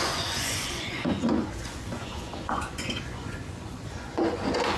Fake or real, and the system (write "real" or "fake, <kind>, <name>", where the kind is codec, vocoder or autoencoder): fake, vocoder, Vocos